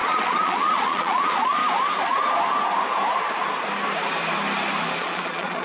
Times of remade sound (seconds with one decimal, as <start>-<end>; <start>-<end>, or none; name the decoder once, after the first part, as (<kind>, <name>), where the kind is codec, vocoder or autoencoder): 0.0-1.6 (vocoder, Vocos); 5.0-5.6

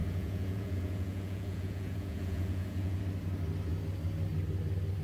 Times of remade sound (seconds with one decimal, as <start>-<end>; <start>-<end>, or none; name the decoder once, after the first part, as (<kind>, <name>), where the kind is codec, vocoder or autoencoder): 0.0-3.0 (vocoder, Vocos)